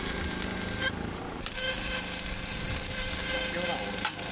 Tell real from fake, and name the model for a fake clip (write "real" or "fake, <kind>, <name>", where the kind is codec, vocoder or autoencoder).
real